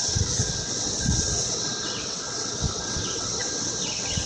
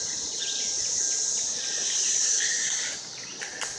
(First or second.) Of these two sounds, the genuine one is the second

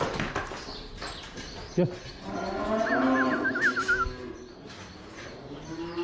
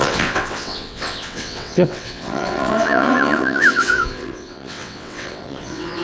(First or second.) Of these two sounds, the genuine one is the first